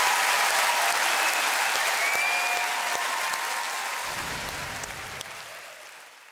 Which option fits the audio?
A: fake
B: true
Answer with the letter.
B